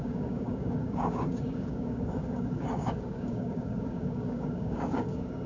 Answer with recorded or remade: remade